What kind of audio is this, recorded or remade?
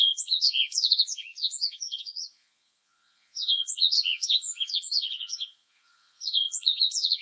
remade